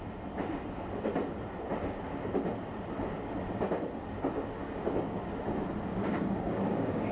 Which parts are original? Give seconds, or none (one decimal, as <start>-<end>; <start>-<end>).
0.0-4.6; 5.2-5.9